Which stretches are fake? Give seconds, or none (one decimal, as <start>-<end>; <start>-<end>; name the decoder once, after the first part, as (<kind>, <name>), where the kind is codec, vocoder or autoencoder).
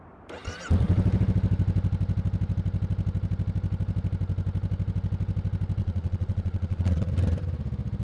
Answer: 5.8-7.1 (vocoder, Vocos)